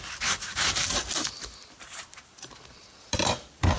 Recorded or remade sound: remade